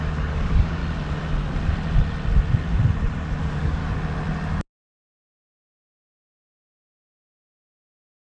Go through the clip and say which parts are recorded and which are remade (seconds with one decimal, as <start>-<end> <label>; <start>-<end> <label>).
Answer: 0.0-0.8 remade; 0.8-3.4 recorded; 3.4-3.8 remade; 3.8-8.4 recorded